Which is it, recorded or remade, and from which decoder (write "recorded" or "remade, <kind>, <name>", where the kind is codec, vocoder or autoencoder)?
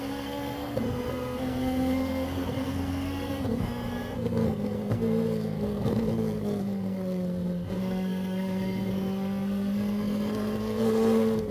remade, codec, SNAC